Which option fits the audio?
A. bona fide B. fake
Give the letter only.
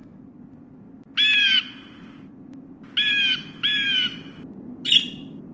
A